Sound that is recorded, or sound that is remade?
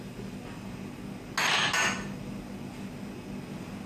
recorded